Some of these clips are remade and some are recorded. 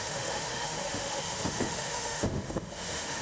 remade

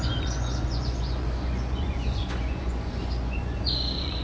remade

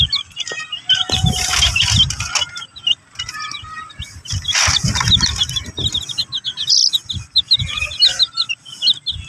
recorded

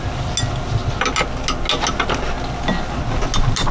recorded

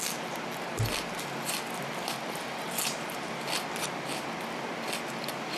recorded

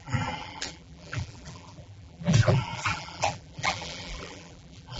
remade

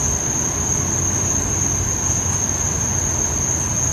recorded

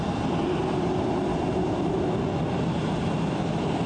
recorded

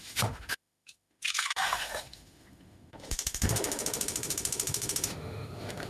remade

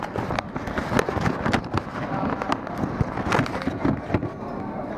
recorded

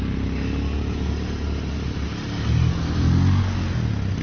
recorded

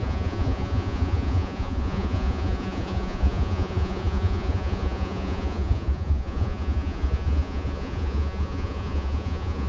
remade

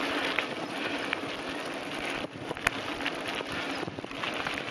recorded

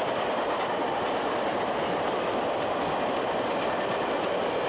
recorded